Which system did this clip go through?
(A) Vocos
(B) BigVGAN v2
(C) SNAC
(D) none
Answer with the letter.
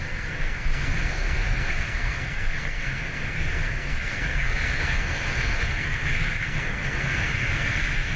C